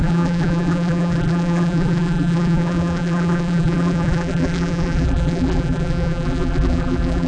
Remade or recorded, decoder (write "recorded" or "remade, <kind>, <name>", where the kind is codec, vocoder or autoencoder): remade, vocoder, BigVGAN v2